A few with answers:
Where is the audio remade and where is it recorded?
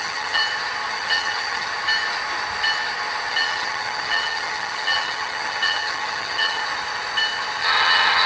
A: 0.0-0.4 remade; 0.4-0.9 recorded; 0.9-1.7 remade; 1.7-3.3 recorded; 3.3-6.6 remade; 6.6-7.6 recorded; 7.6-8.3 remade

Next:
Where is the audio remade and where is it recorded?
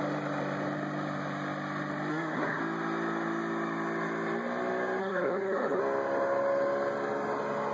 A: 0.0-2.1 recorded; 2.1-2.6 remade; 2.6-5.0 recorded; 5.0-5.8 remade; 5.8-7.7 recorded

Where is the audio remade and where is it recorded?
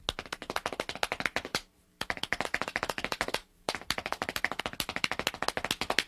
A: 0.0-1.5 recorded; 1.5-4.6 remade; 4.6-6.1 recorded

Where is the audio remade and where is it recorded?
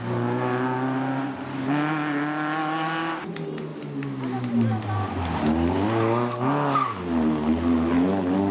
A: 0.0-8.5 recorded